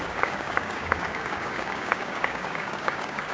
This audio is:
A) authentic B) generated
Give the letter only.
B